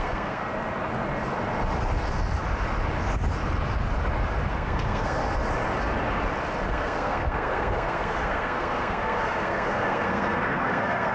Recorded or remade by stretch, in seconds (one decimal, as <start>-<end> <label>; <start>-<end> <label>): 0.0-0.4 remade; 0.4-4.5 recorded; 4.5-5.2 remade; 5.2-6.7 recorded; 6.7-11.1 remade